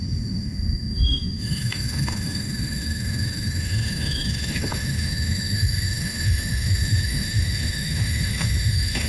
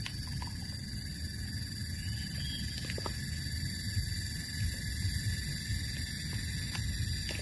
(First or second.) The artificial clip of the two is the first